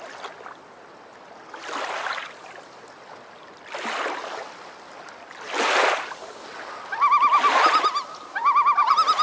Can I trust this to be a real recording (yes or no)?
yes